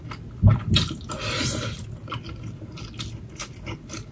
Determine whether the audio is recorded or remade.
recorded